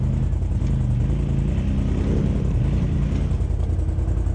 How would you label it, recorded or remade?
recorded